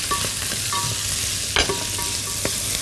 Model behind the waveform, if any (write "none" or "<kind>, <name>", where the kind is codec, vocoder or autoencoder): none